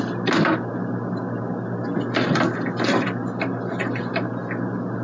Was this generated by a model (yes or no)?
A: no